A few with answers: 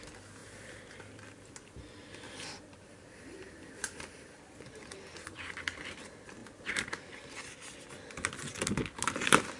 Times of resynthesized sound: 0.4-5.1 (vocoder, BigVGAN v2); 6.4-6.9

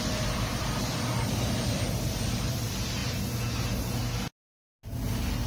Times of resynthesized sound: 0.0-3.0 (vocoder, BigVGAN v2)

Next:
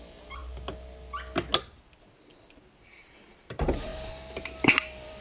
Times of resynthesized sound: 0.0-0.4 (vocoder, BigVGAN v2); 1.6-5.2

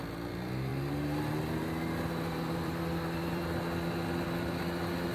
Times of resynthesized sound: 0.7-3.6 (vocoder, BigVGAN v2)